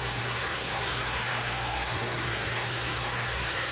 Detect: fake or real fake